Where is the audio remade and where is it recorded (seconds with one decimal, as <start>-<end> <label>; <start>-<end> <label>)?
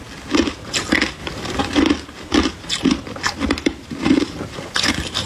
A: 0.0-1.2 recorded; 1.2-1.8 remade; 1.8-5.3 recorded